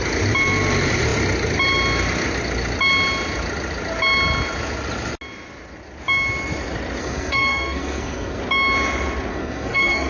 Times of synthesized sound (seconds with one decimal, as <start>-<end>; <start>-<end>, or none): 7.0-8.4; 9.3-10.1